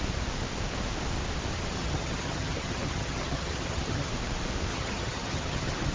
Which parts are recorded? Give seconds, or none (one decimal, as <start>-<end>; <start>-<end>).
0.0-1.5; 4.1-4.7